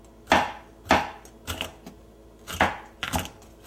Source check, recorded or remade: recorded